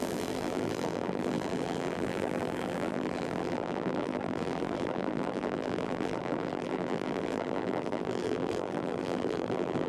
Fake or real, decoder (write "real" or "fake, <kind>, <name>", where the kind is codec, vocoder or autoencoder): fake, vocoder, BigVGAN v2